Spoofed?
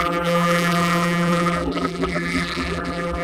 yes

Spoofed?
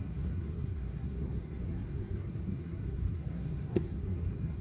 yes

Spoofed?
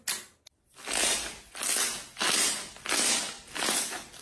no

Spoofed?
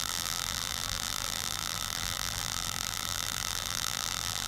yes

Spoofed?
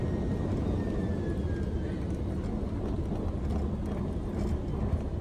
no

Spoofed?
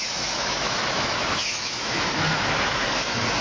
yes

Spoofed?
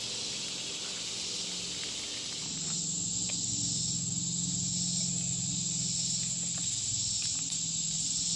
no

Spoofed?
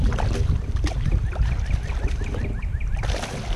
no